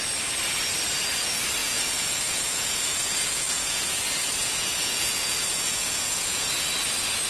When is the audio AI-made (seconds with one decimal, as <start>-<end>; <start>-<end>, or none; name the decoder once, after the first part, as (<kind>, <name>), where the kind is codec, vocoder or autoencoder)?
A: 1.6-4.0 (vocoder, Vocos); 4.4-6.5